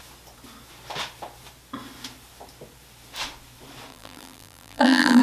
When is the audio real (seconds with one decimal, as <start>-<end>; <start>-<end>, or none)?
0.0-3.9